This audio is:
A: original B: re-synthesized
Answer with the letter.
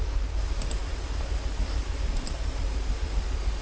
B